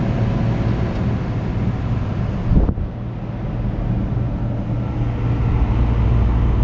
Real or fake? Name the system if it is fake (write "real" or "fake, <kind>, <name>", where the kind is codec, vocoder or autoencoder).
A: real